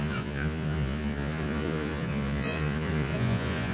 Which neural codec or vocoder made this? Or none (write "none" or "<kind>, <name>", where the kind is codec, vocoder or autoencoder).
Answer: vocoder, Vocos